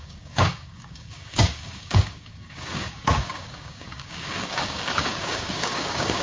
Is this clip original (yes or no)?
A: no